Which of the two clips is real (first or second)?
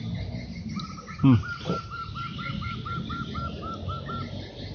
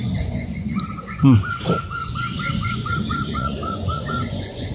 first